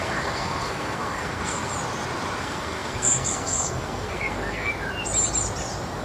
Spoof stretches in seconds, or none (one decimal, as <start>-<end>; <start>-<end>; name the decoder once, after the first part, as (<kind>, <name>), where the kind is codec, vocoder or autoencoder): 0.0-1.7 (codec, SNAC); 2.4-4.7